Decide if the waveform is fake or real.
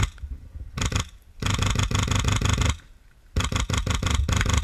real